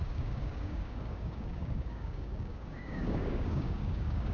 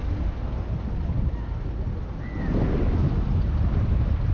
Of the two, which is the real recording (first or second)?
second